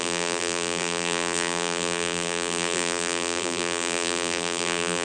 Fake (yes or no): yes